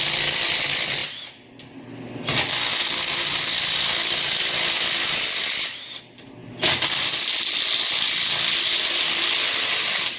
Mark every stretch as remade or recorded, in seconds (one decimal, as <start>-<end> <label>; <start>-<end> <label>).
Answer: 0.0-10.2 recorded